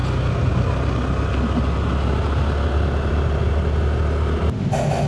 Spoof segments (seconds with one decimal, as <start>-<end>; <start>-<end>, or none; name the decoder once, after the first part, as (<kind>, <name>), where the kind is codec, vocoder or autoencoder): none